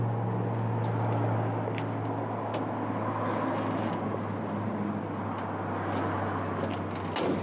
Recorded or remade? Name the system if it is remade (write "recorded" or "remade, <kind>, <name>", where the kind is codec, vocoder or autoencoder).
recorded